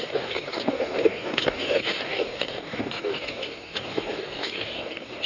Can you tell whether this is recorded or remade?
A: remade